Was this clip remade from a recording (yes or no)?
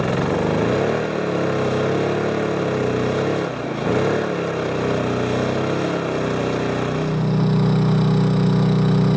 no